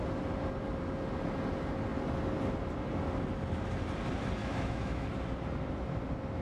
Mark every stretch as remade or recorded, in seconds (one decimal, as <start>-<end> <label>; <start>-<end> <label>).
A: 0.0-4.4 recorded; 4.4-5.1 remade; 5.1-6.4 recorded